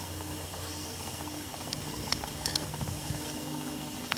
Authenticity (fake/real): fake